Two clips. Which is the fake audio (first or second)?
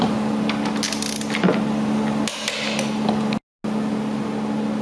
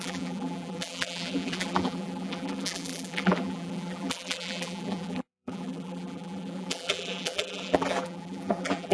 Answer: second